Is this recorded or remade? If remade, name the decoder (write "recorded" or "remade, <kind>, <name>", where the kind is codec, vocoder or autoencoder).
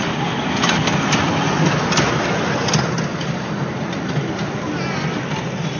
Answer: recorded